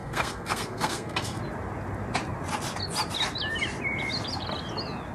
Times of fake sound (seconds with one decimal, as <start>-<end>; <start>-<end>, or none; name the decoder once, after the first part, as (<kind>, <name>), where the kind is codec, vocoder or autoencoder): 0.0-1.4 (codec, SNAC)

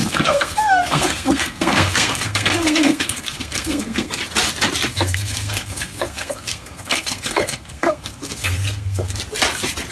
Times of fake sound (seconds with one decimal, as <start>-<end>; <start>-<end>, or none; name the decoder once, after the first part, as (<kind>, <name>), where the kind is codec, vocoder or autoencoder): 0.0-4.2 (codec, SNAC); 4.9-9.2

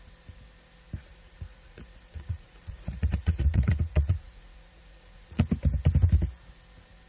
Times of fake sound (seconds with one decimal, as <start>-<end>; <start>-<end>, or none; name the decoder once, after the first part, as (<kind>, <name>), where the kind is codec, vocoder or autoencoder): 1.1-5.4 (vocoder, Vocos)

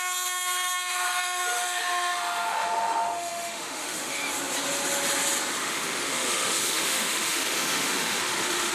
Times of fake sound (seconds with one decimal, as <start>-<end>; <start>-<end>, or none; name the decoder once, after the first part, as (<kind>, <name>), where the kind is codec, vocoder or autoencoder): 0.0-4.2 (autoencoder, DAC-VAE); 5.6-8.7

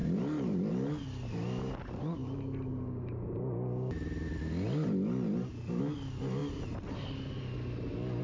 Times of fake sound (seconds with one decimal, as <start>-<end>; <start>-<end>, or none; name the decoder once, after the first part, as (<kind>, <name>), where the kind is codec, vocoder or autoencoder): none

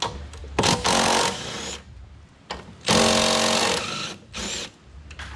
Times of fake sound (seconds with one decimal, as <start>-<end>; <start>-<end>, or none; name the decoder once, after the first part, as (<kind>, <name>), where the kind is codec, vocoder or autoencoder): none

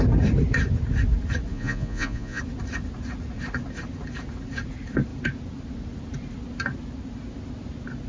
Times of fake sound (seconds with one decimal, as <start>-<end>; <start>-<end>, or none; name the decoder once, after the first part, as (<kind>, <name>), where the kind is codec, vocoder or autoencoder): 1.5-2.4 (vocoder, Vocos)